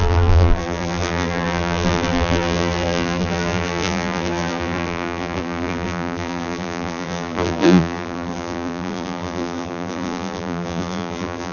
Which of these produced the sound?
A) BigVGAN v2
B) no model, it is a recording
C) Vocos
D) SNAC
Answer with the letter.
A